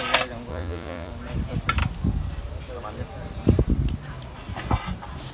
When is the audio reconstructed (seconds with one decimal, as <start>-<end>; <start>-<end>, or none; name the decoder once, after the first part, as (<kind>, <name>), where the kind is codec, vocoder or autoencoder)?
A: 0.5-1.1 (vocoder, Vocos)